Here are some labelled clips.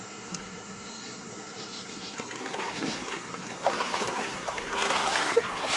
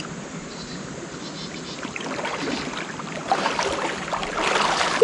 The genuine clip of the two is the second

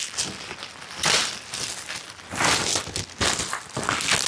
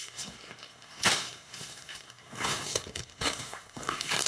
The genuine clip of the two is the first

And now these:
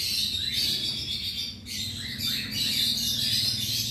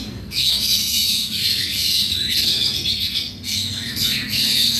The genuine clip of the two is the first